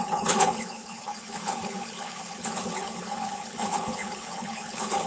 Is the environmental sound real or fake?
fake